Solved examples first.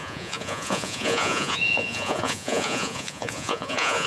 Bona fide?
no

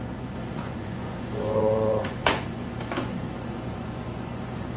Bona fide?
no